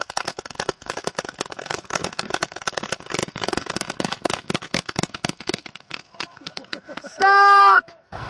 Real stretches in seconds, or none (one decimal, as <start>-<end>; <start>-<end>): none